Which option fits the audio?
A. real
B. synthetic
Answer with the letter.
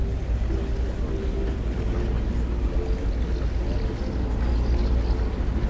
A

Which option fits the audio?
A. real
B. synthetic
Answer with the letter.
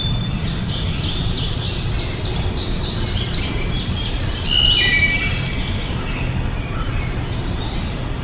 A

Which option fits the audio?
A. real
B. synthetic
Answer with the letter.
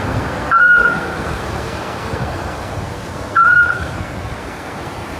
B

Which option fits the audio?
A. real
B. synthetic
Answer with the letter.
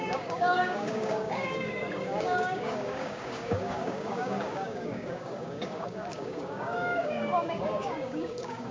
B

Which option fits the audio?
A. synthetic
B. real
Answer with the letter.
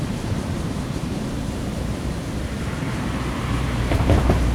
A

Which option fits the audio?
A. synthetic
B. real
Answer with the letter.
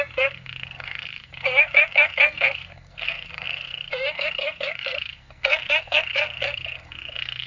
A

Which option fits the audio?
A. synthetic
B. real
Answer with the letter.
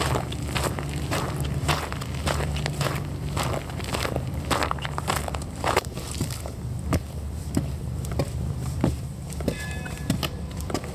A